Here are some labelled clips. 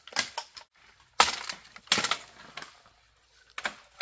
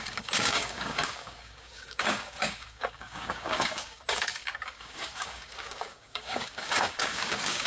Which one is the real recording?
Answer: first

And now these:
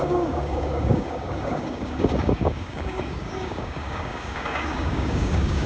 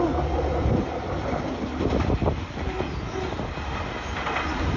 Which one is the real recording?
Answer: second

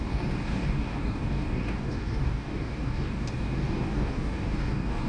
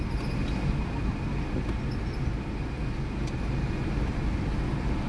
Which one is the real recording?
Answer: second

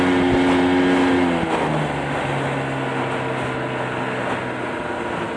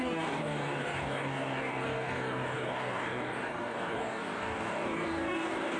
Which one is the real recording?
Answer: first